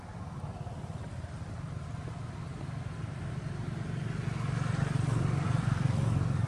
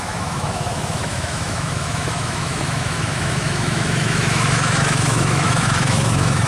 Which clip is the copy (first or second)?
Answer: second